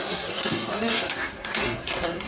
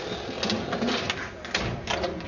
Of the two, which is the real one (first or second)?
second